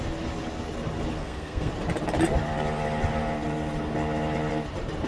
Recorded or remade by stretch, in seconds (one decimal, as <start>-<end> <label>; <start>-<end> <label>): 0.0-1.2 recorded; 1.2-1.7 remade; 1.7-5.1 recorded